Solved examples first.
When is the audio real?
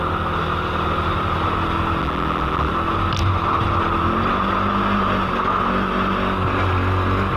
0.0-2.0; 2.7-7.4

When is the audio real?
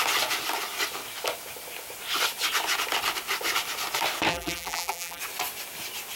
0.0-4.3; 5.2-6.2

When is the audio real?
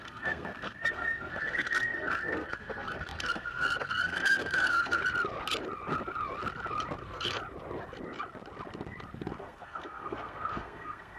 5.0-7.0; 7.4-9.4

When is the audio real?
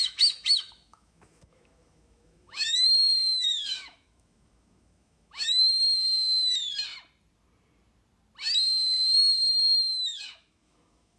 6.0-9.5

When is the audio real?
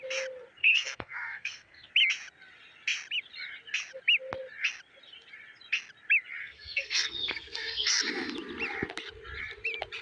0.0-0.6; 1.9-6.4; 7.9-10.0